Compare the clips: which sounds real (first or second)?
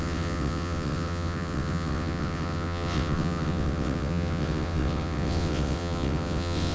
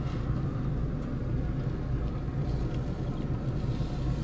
second